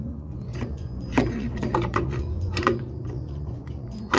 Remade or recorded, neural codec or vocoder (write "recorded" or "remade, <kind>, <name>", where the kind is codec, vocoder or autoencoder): remade, vocoder, Vocos